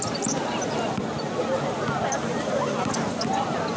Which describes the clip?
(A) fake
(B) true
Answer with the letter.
B